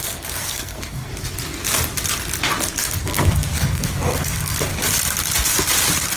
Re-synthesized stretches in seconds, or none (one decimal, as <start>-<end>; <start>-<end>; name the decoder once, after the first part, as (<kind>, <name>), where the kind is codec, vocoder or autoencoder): 0.0-1.1 (codec, SNAC); 3.0-4.7